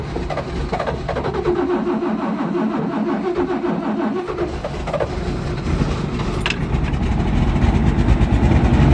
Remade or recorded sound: recorded